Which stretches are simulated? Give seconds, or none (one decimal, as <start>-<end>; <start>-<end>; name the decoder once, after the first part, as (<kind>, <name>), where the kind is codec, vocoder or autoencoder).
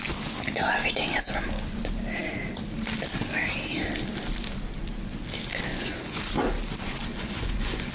5.7-6.2 (vocoder, Vocos); 7.1-7.9